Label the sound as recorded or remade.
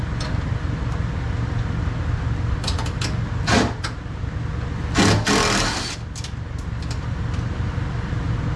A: recorded